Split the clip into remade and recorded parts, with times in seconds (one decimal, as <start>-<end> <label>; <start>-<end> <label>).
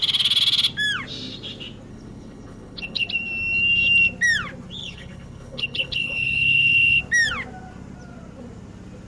0.0-1.9 recorded; 1.9-3.1 remade; 3.1-4.8 recorded; 4.8-7.0 remade; 7.0-9.1 recorded